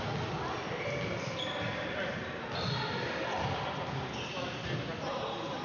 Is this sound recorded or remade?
recorded